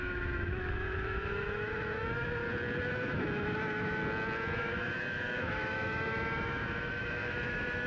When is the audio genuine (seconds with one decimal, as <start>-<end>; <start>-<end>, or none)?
2.4-2.9; 4.0-4.6